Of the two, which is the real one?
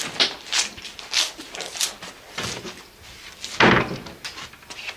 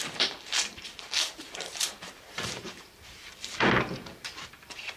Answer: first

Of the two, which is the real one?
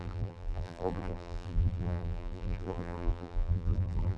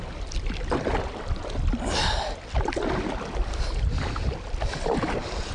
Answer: second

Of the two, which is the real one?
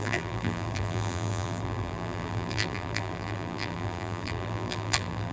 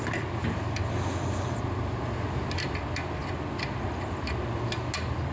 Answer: second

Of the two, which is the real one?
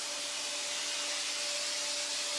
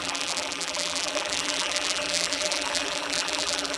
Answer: first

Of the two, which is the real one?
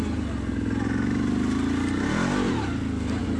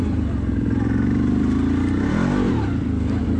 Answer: first